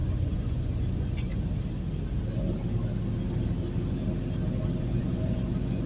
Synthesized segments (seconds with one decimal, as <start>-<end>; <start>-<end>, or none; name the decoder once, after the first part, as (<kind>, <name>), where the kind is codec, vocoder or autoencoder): 0.0-1.3 (vocoder, Vocos); 4.8-5.9